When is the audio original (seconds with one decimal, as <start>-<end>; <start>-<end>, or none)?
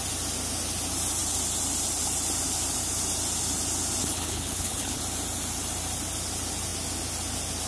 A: 0.0-4.0; 5.0-7.7